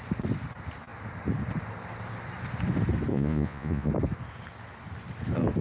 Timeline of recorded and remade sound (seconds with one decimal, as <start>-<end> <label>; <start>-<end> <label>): 0.0-3.1 recorded; 3.1-3.9 remade; 3.9-5.6 recorded